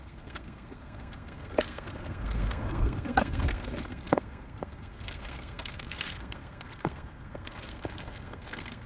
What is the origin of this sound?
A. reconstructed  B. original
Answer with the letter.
A